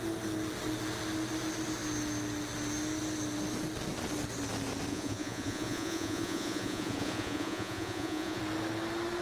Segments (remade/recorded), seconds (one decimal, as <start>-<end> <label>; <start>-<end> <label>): 0.0-4.9 recorded; 4.9-8.4 remade; 8.4-9.2 recorded